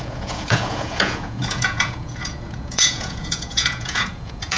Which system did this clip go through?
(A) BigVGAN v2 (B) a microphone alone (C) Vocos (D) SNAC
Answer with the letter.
C